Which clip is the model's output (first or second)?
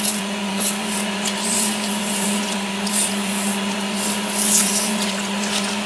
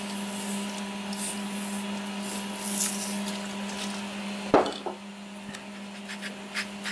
first